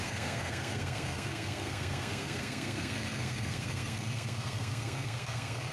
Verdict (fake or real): fake